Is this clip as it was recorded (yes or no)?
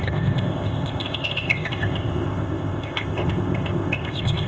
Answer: no